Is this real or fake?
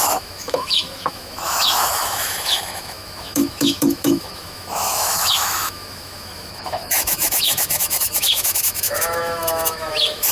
fake